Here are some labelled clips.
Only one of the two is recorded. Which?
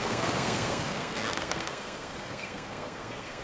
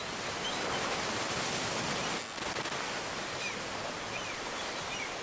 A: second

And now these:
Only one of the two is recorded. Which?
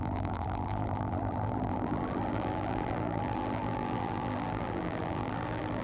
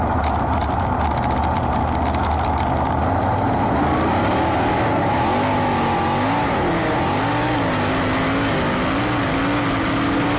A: second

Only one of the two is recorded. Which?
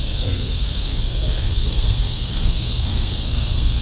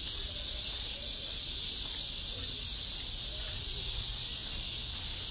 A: second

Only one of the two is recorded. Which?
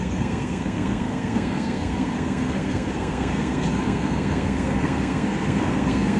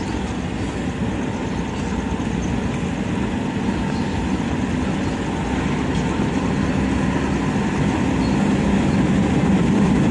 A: second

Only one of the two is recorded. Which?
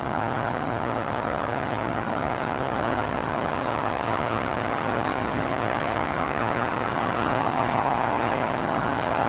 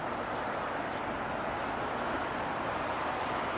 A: second